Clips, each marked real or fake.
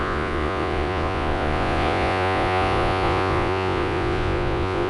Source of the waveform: fake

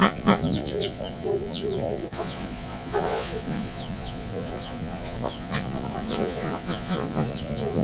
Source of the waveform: fake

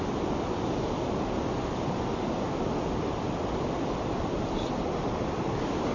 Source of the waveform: real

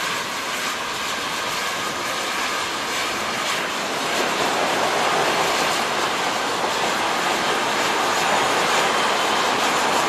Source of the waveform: real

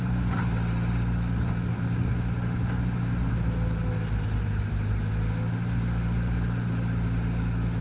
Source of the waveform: real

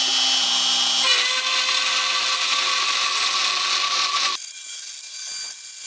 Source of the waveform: real